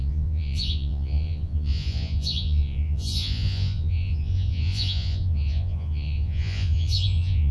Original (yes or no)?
no